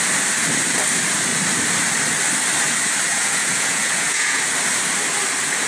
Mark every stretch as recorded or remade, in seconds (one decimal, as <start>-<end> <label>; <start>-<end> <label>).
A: 0.0-3.1 recorded; 3.1-4.4 remade; 4.4-5.7 recorded